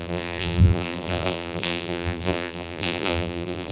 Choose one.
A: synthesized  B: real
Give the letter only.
A